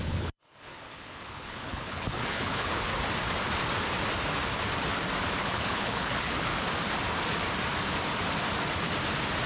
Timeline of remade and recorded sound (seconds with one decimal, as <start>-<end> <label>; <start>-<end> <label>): 0.0-2.9 remade; 2.9-5.4 recorded; 5.4-6.5 remade; 6.5-9.5 recorded